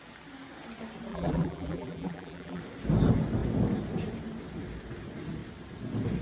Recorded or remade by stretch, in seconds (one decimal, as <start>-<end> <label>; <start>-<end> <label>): 0.0-1.1 recorded; 1.1-2.6 remade; 2.6-6.2 recorded